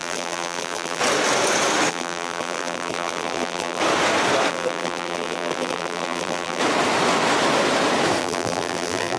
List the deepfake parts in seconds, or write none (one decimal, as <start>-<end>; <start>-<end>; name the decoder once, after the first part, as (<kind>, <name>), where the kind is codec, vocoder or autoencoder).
0.0-1.0 (vocoder, BigVGAN v2); 1.9-3.8; 4.5-6.6; 8.2-9.2